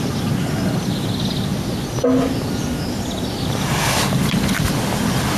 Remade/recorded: recorded